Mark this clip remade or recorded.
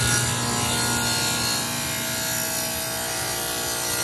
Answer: recorded